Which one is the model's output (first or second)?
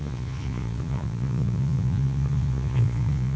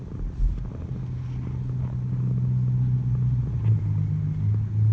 first